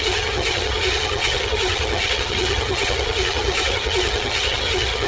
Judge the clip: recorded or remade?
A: remade